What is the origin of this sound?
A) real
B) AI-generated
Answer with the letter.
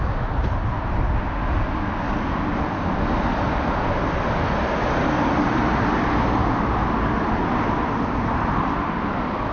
A